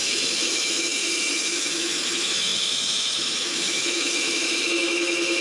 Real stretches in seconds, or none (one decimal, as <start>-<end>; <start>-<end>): none